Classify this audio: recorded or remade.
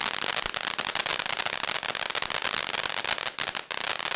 recorded